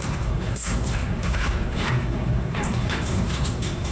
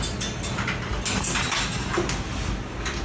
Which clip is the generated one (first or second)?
first